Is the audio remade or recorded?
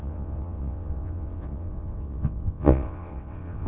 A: remade